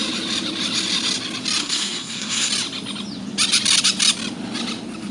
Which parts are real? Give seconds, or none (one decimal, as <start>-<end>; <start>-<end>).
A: 0.0-1.6; 2.5-5.1